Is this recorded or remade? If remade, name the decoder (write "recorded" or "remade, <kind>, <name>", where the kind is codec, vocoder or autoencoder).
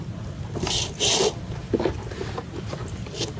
recorded